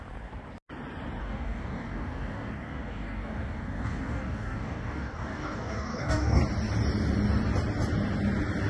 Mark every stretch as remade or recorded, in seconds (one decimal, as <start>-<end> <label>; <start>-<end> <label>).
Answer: 0.0-1.2 recorded; 1.2-6.4 remade; 6.4-8.7 recorded